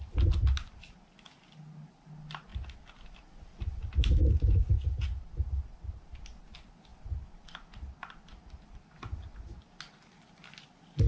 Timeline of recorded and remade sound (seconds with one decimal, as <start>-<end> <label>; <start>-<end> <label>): 0.0-11.1 recorded